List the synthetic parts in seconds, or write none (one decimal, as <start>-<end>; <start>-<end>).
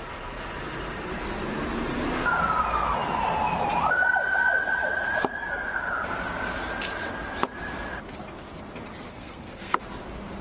9.1-9.8